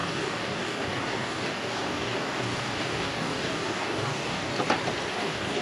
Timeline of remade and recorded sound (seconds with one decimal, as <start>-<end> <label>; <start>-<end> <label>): 0.0-4.5 remade; 4.5-5.1 recorded; 5.1-5.6 remade